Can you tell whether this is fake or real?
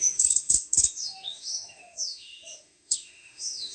fake